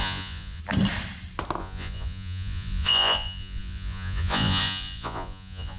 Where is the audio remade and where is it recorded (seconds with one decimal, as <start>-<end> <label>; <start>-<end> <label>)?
0.0-0.6 remade; 0.6-1.6 recorded; 1.6-5.8 remade